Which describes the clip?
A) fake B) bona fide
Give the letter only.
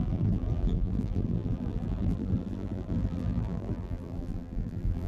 A